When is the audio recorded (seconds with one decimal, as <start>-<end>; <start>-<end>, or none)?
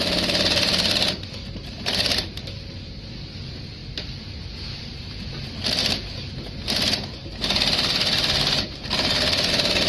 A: 0.0-9.9